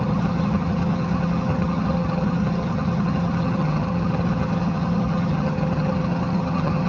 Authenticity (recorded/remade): remade